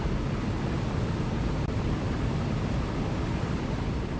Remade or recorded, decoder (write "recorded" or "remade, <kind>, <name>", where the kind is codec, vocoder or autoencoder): recorded